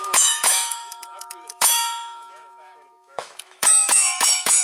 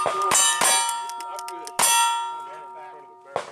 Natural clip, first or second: second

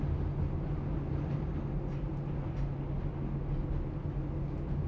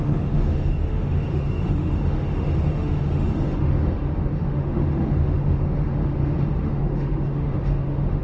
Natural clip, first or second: first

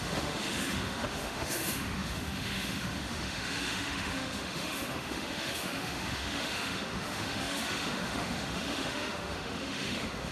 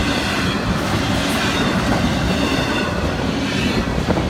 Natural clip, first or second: second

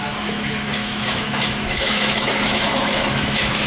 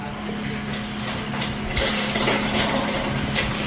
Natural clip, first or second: second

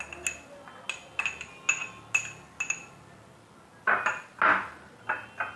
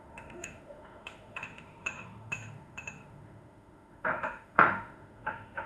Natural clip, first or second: first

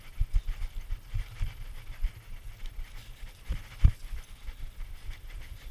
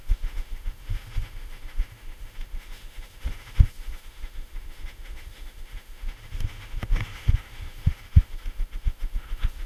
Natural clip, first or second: first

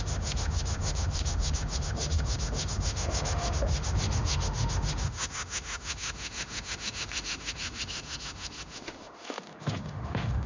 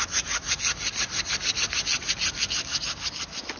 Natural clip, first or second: second